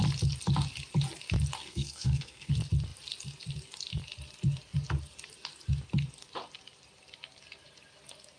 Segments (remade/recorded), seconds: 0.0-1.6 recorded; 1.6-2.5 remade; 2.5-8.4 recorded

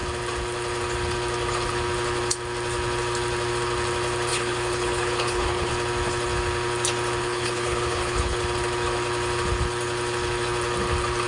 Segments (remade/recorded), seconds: 0.0-4.3 recorded; 4.3-5.7 remade; 5.7-7.2 recorded; 7.2-8.4 remade; 8.4-11.3 recorded

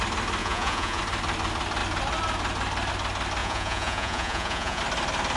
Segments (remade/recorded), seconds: 0.0-0.4 recorded; 0.4-1.0 remade; 1.0-3.4 recorded; 3.4-4.8 remade; 4.8-5.4 recorded

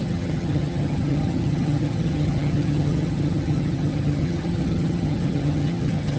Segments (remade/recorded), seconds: 0.0-6.2 remade

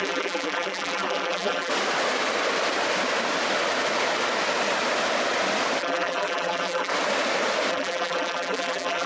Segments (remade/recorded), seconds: 0.0-1.7 remade; 1.7-5.8 recorded; 5.8-6.9 remade; 6.9-7.7 recorded; 7.7-9.1 remade

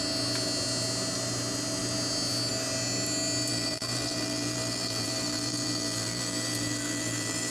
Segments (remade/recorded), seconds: 0.0-3.5 recorded; 3.5-7.5 remade